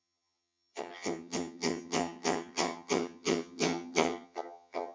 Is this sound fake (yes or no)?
yes